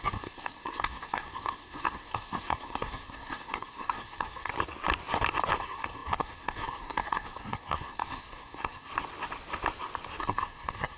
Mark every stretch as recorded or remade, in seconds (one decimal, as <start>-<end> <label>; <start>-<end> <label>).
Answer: 0.0-4.5 remade; 4.5-5.6 recorded; 5.6-8.9 remade; 8.9-10.2 recorded; 10.2-11.0 remade